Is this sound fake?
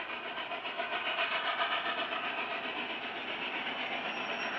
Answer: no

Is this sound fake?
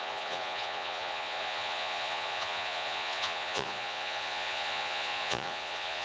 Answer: yes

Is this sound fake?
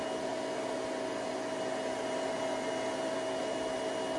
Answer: no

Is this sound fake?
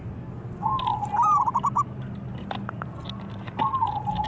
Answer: no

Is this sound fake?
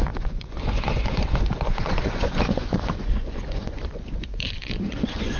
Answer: yes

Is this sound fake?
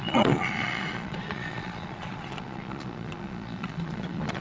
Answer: yes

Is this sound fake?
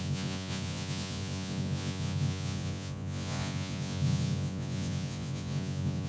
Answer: yes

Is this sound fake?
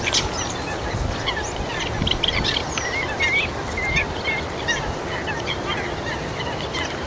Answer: no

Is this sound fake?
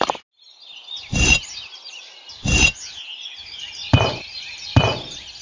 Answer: no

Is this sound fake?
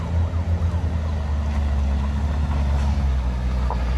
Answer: no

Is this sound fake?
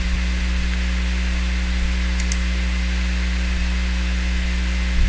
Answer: no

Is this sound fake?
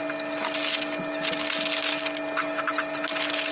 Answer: no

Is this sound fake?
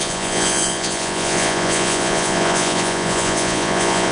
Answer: yes